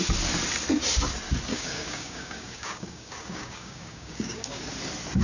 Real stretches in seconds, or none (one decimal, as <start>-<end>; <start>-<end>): 0.0-1.5; 4.6-5.2